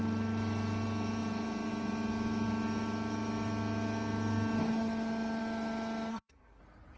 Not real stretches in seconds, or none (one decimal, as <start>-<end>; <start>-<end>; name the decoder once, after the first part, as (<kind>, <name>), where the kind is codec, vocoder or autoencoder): 6.1-6.6 (codec, SNAC)